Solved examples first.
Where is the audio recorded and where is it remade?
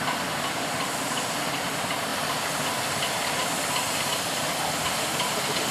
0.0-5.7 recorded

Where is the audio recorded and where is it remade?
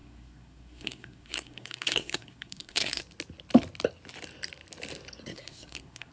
0.0-3.0 remade; 3.0-5.3 recorded; 5.3-6.1 remade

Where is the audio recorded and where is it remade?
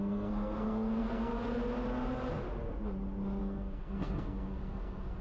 0.0-1.3 remade; 1.3-3.4 recorded; 3.4-5.2 remade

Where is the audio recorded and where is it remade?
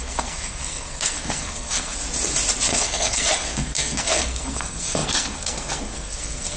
0.0-2.0 remade; 2.0-2.7 recorded; 2.7-6.6 remade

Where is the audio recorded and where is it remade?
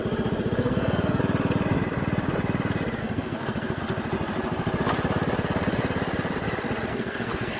0.0-0.6 recorded; 0.6-1.2 remade; 1.2-3.0 recorded; 3.0-3.8 remade; 3.8-6.9 recorded; 6.9-7.6 remade